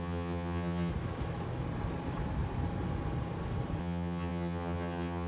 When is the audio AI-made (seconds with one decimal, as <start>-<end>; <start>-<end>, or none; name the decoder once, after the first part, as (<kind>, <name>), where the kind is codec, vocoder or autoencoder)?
0.0-0.9 (vocoder, HiFi-GAN); 3.8-5.3